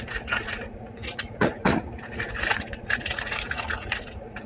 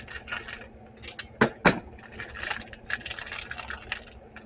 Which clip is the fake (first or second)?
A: first